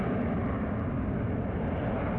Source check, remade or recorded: recorded